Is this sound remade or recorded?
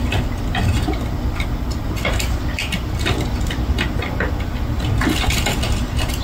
recorded